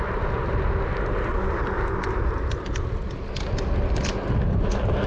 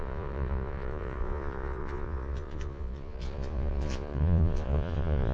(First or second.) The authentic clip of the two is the first